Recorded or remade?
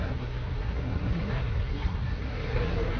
remade